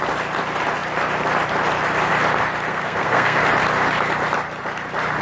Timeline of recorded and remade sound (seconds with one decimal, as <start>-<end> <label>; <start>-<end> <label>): 0.0-2.7 recorded; 2.7-3.4 remade; 3.4-5.2 recorded